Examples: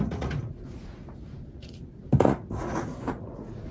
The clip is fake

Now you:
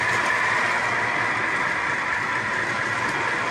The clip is real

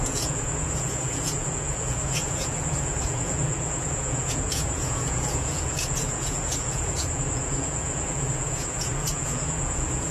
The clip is fake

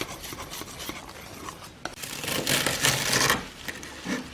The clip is real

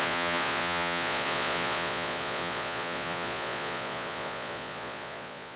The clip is fake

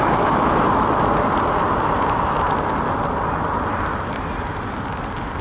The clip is real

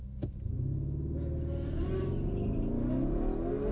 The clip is real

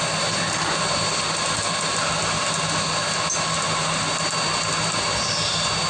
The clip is real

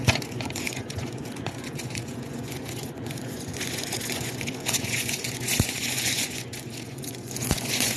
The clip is fake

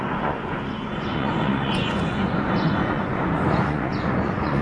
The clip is fake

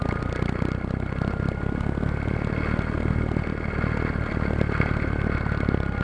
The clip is real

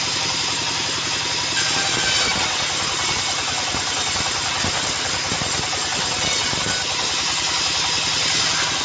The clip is real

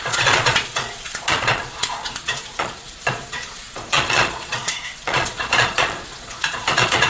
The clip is fake